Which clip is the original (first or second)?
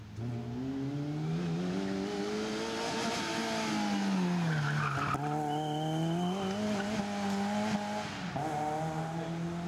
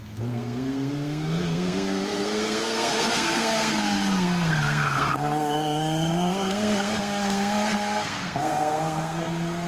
first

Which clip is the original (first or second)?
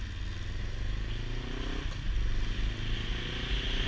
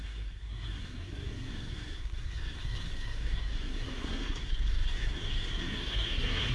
first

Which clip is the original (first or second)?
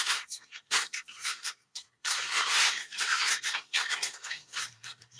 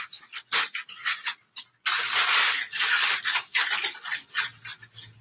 second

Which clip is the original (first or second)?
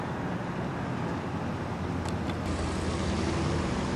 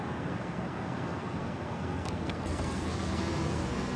first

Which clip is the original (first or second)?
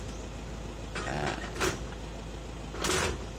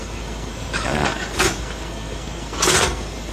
first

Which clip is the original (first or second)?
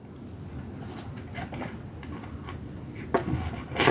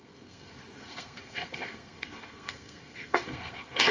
first